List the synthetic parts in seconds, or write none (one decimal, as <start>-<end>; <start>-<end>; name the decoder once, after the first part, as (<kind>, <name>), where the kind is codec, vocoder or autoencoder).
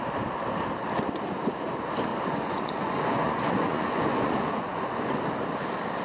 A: 2.1-5.2 (vocoder, Vocos)